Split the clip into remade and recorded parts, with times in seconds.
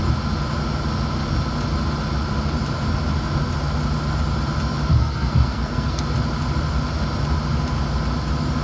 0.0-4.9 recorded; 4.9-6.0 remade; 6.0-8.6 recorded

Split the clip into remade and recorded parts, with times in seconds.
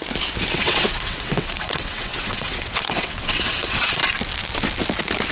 0.0-0.6 recorded; 0.6-4.0 remade; 4.0-5.3 recorded